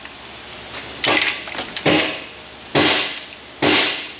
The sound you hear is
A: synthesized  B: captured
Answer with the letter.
B